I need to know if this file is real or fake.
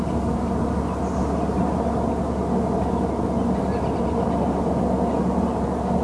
real